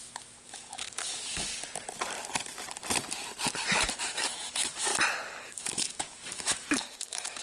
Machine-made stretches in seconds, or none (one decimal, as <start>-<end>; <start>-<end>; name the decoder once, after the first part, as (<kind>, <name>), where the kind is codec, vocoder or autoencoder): 0.0-1.5 (autoencoder, DAC-VAE); 3.9-4.9; 5.4-7.4

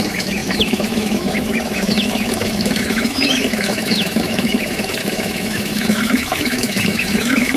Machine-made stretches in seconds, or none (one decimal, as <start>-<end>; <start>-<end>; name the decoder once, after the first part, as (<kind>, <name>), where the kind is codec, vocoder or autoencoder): 0.0-7.6 (autoencoder, DAC-VAE)